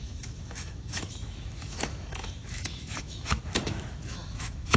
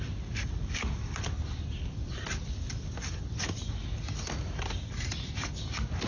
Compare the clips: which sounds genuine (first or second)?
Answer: second